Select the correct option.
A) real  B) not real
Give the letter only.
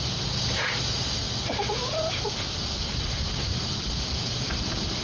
A